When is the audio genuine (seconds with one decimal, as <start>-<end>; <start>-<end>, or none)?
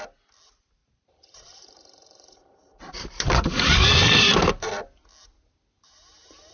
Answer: 0.0-0.8; 4.7-6.5